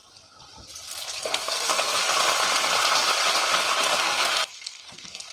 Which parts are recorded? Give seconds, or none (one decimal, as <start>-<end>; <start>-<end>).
0.0-1.2; 2.0-3.9